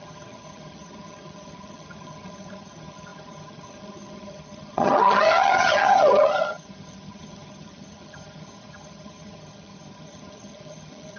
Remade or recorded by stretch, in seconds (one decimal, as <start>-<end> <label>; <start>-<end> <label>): 0.0-11.2 remade